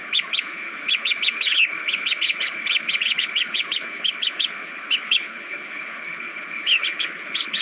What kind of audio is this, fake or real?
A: fake